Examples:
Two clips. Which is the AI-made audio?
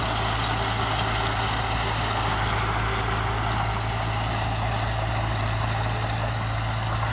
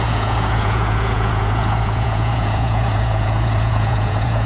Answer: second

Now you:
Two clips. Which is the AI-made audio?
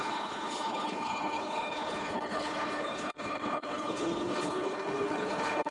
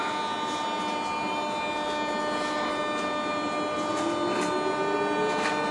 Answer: first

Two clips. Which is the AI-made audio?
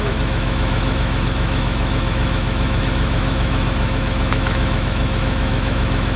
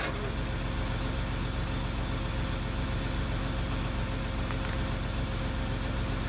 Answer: first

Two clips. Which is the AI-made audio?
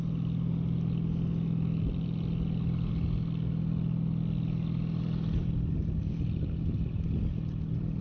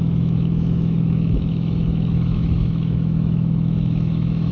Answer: second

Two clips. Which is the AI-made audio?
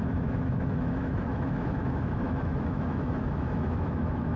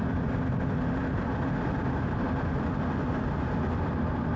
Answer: first